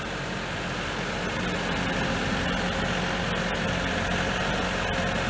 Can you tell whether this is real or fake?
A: real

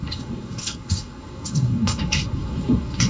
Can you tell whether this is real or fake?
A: fake